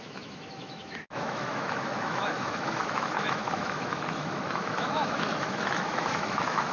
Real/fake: fake